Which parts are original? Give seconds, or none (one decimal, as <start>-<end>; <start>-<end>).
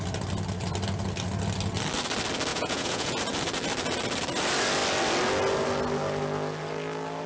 0.0-2.5; 3.2-7.3